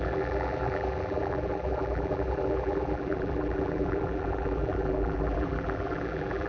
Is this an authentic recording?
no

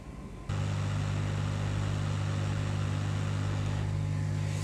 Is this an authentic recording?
yes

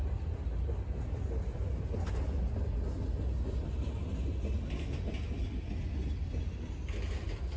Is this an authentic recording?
yes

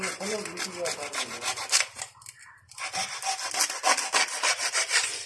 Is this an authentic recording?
yes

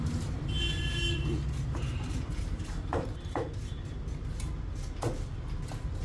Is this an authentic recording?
yes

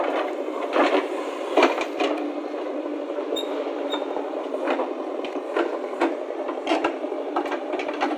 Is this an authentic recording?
no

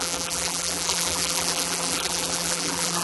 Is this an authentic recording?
no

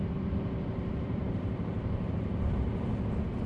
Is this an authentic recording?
no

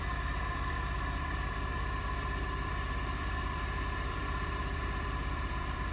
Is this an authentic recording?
no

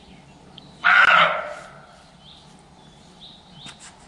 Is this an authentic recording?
no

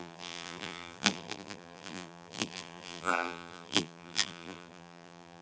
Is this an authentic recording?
no